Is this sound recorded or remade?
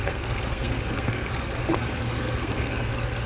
remade